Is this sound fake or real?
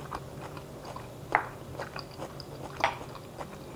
real